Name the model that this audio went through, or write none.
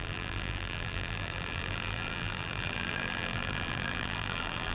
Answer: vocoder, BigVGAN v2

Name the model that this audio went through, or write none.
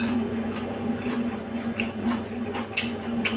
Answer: vocoder, Vocos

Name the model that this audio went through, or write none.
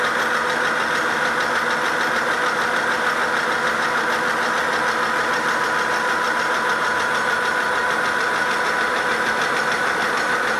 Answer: none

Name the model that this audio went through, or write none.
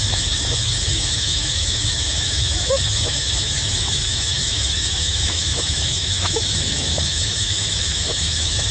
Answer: autoencoder, DAC-VAE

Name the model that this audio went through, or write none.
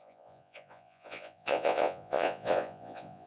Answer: vocoder, Vocos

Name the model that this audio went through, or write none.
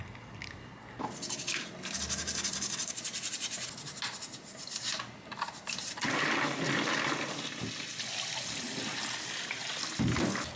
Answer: none